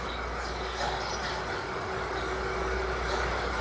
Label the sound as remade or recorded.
remade